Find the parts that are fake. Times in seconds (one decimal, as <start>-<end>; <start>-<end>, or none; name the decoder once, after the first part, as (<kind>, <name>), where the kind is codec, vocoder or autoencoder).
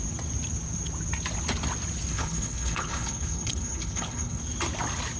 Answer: 2.1-4.4 (codec, HILCodec)